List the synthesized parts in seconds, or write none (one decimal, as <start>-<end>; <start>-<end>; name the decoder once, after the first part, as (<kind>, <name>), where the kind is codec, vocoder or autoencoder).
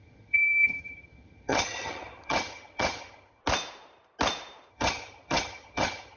0.0-3.4 (vocoder, HiFi-GAN); 4.7-6.2